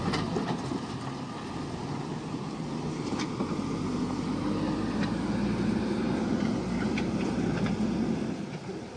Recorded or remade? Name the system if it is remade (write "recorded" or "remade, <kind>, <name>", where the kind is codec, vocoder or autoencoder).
recorded